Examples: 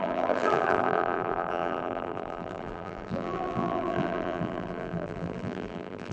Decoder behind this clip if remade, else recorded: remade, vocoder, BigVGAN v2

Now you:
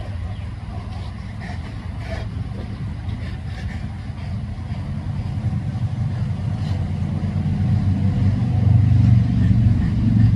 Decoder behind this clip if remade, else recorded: recorded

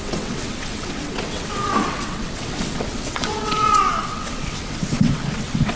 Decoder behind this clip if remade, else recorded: remade, vocoder, WaveNeXt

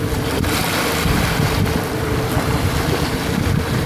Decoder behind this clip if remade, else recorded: recorded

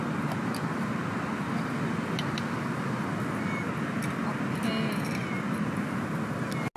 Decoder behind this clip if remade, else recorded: recorded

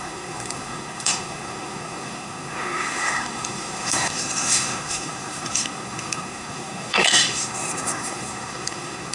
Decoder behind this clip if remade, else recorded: remade, codec, SNAC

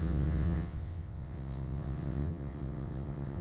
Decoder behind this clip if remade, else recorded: remade, vocoder, WaveNeXt